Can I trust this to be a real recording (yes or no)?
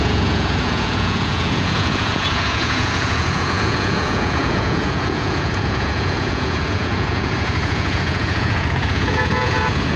no